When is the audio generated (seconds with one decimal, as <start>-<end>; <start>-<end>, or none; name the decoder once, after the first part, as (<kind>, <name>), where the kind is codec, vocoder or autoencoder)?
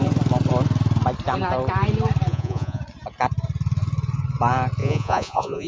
2.3-2.8 (vocoder, Vocos); 4.8-5.7